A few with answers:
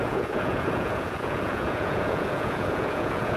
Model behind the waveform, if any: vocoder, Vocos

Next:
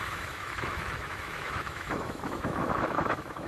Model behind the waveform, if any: autoencoder, DAC-VAE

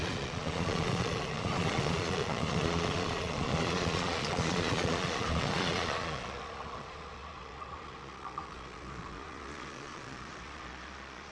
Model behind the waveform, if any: vocoder, Vocos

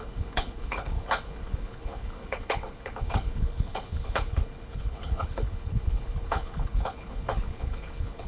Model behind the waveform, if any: codec, HILCodec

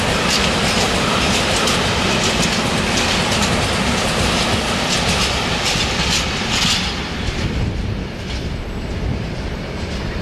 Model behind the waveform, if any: none